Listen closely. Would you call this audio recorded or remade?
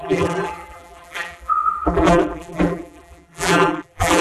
remade